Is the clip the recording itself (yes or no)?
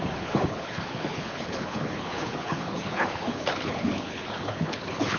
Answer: no